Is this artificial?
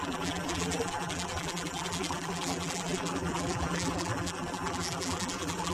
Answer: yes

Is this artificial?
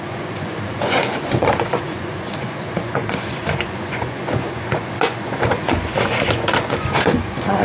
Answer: yes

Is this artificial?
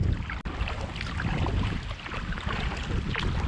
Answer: no